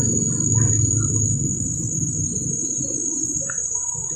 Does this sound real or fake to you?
real